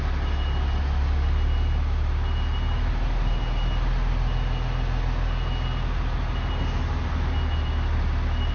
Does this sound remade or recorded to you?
recorded